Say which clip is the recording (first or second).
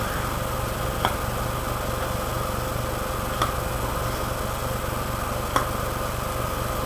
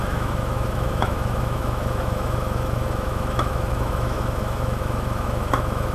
first